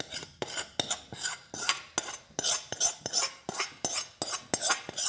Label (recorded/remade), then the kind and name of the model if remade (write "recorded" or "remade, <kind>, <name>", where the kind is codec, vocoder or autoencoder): recorded